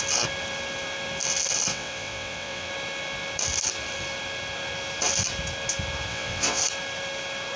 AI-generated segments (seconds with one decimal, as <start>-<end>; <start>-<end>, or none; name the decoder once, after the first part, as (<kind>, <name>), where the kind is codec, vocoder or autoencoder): 1.7-2.7 (vocoder, WaveNeXt); 6.1-6.6